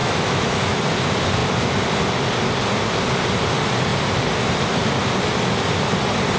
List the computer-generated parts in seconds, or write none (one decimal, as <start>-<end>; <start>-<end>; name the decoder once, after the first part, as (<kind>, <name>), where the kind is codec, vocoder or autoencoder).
0.0-0.8 (autoencoder, DAC-VAE)